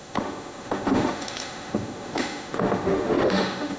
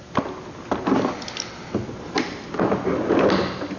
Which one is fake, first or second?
first